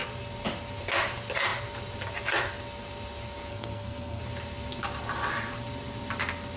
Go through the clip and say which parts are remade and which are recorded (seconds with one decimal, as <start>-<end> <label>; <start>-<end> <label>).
0.0-3.5 recorded; 3.5-4.2 remade; 4.2-6.6 recorded